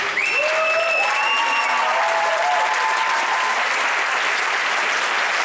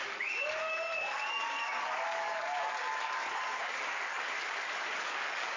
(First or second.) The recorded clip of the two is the first